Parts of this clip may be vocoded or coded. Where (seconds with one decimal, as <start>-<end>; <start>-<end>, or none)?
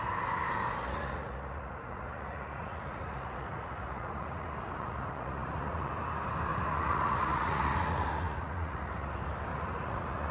0.8-5.9; 6.5-9.1; 9.5-10.3